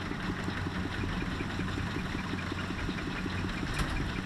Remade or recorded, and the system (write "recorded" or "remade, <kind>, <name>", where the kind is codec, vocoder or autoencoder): recorded